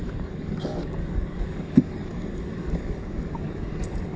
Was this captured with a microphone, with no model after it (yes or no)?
no